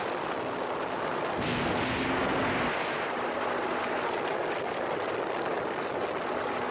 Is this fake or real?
real